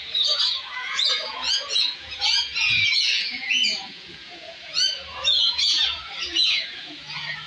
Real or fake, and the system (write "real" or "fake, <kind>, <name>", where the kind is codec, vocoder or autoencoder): fake, vocoder, Vocos